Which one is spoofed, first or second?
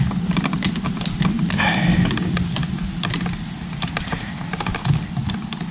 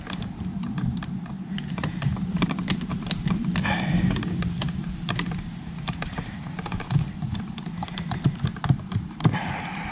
second